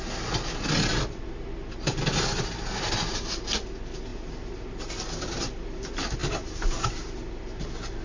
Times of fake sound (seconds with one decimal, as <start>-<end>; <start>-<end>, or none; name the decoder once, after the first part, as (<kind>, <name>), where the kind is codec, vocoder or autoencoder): none